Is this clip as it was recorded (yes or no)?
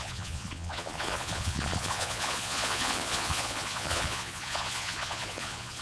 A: no